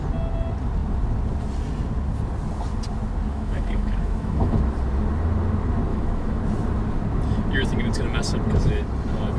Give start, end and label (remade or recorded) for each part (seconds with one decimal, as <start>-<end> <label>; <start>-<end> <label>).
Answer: 0.0-3.3 recorded; 3.3-4.6 remade; 4.6-5.9 recorded; 5.9-6.4 remade; 6.4-9.4 recorded